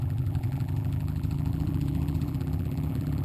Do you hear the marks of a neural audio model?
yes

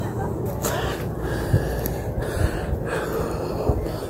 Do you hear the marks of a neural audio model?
no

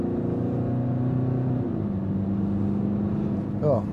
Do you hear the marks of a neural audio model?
no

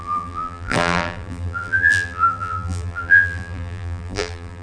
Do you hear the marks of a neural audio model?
yes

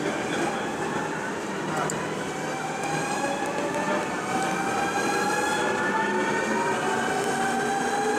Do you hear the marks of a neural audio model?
no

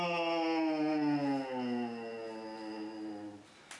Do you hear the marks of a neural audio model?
no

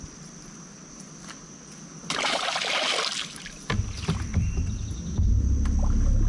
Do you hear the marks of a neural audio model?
no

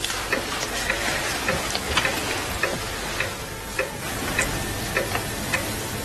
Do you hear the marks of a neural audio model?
no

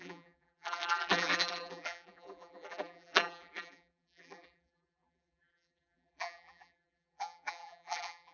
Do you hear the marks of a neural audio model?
yes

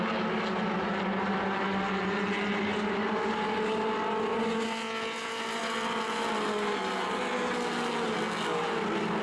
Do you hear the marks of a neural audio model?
no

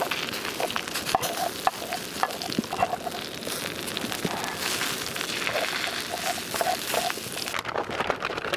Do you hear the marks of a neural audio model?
no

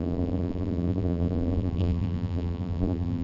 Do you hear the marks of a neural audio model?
yes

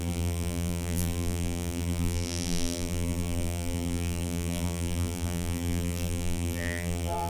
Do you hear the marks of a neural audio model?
yes